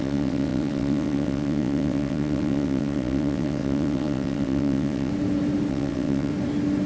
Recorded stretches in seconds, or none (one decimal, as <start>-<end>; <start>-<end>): 5.1-5.7; 6.3-6.9